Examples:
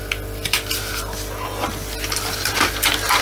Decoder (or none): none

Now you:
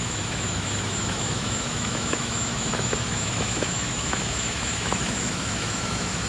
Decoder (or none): autoencoder, DAC-VAE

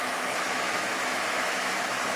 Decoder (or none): autoencoder, DAC-VAE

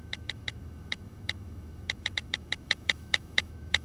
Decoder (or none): autoencoder, DAC-VAE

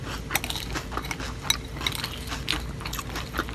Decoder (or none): none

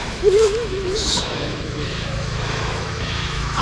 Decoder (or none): autoencoder, DAC-VAE